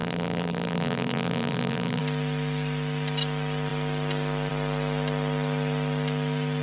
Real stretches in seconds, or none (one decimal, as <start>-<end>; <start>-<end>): 2.0-6.6